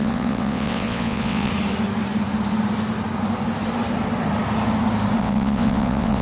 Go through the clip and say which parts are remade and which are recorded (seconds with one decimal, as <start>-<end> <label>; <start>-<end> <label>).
0.0-1.5 remade; 1.5-5.2 recorded; 5.2-6.2 remade